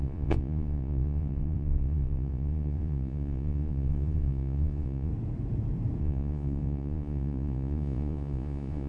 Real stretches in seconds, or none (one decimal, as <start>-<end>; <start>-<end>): 5.1-6.0